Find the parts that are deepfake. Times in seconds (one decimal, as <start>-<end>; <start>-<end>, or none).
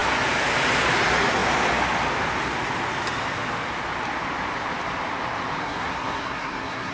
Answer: 5.6-6.9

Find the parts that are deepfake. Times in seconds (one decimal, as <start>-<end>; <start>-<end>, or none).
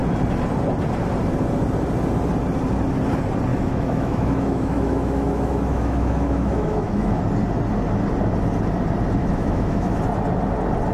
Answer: 3.5-7.2; 9.2-10.0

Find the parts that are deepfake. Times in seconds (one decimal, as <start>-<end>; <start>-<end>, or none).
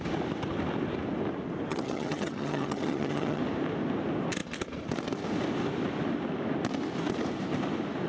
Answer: 1.7-3.4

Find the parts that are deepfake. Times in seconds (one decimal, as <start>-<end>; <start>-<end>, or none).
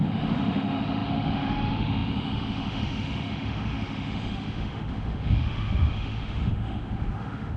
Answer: 0.0-7.6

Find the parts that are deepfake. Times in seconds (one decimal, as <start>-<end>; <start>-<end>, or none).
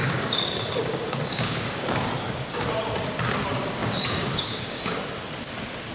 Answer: 0.0-2.1; 3.8-5.0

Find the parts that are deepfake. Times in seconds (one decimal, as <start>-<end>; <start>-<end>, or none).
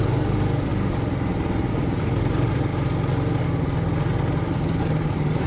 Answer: 0.0-0.7; 1.7-2.7; 4.8-5.5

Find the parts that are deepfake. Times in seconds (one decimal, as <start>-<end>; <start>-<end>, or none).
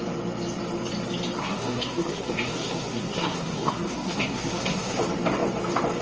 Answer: 1.4-5.0